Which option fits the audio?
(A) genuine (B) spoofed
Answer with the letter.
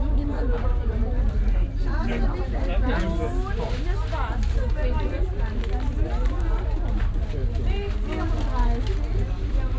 A